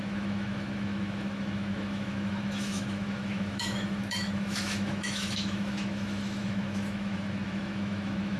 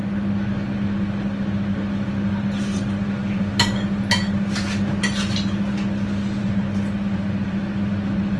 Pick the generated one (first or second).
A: first